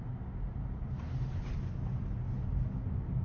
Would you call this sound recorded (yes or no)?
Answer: yes